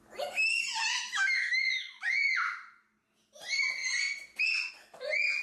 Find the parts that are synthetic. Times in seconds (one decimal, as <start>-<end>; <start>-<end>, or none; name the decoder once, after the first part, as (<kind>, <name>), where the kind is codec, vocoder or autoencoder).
0.9-2.1 (autoencoder, DAC-VAE)